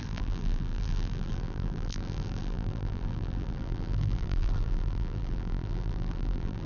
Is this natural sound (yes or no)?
no